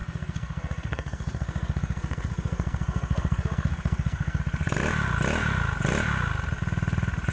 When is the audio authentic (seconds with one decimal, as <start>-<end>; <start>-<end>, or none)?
4.4-7.3

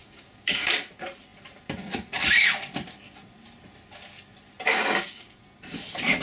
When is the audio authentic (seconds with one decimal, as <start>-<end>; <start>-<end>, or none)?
0.7-4.7; 5.4-6.2

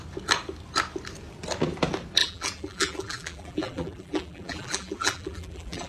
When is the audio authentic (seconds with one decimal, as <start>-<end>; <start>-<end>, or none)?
0.0-2.2

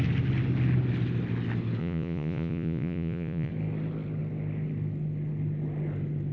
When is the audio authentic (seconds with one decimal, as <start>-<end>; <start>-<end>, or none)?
0.0-1.8; 3.5-6.3

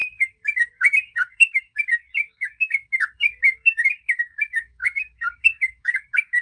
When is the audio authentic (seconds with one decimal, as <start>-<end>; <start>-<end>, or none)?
none